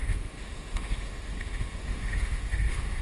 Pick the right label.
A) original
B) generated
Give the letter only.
B